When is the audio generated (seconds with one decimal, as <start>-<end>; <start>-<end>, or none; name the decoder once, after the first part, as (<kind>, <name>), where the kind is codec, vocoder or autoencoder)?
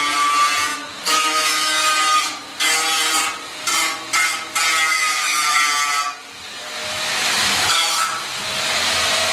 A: 0.7-1.7 (autoencoder, DAC-VAE); 4.9-5.6; 6.9-8.4